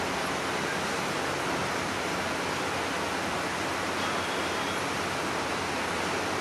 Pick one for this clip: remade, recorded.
recorded